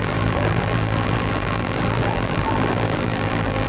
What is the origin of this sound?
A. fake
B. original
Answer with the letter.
A